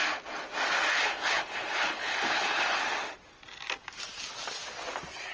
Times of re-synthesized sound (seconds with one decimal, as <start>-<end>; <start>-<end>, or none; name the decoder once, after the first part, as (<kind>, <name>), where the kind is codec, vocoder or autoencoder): 0.9-2.8 (codec, HILCodec)